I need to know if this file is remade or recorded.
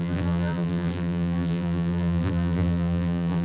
remade